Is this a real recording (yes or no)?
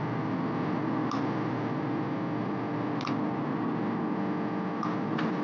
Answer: yes